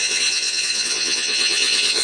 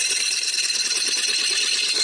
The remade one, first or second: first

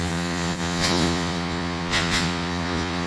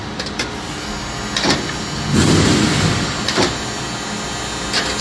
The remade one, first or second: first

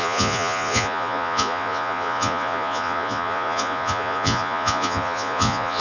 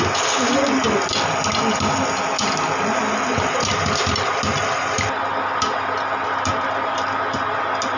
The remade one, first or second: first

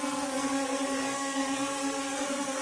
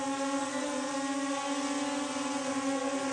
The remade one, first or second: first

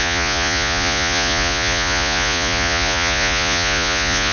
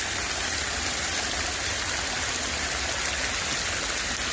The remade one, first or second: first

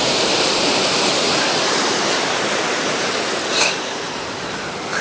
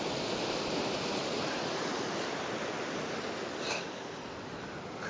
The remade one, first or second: first